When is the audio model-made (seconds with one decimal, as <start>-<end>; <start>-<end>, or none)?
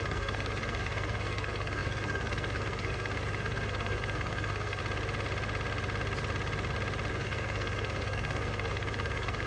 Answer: 0.0-4.8; 7.1-9.5